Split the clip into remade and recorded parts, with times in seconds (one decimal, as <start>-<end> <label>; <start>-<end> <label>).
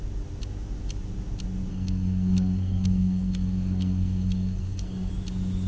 0.0-1.7 recorded; 1.7-5.1 remade; 5.1-5.7 recorded